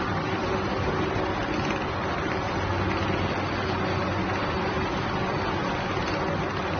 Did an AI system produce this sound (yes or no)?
no